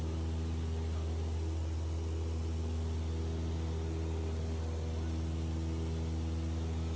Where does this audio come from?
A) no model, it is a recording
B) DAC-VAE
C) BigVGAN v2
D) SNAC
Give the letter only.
A